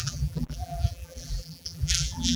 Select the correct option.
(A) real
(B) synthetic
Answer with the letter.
B